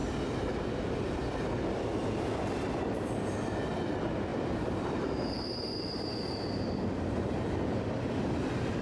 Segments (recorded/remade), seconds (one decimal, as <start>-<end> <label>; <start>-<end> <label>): 0.0-4.3 recorded; 4.3-6.4 remade; 6.4-8.8 recorded